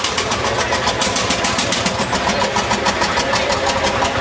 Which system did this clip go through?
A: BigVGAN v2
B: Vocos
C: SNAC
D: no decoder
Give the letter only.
D